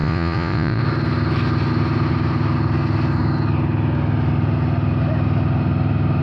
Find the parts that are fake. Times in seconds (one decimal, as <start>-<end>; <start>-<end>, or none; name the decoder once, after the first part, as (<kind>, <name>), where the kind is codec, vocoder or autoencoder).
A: 0.0-0.8 (vocoder, Vocos)